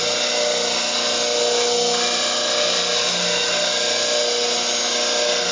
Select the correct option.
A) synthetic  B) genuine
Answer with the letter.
B